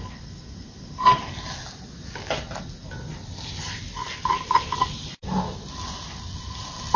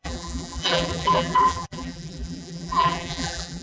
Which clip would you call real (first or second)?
first